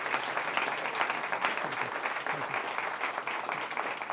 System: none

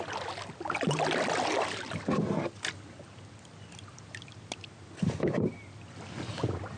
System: none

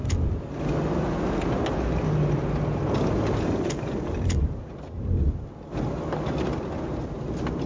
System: none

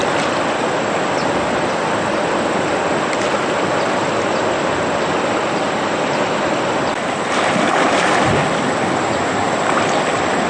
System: none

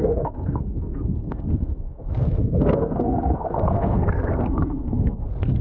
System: codec, SNAC